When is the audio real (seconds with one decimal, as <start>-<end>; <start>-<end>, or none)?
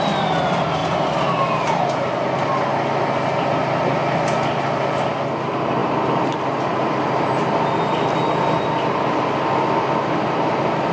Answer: 0.0-0.8; 1.6-5.8; 8.7-10.9